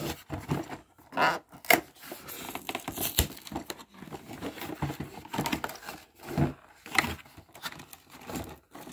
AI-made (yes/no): no